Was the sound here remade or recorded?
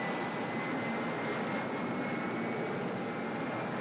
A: recorded